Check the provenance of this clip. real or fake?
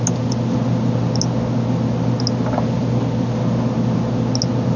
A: real